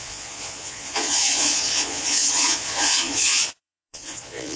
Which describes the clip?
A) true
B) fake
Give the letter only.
B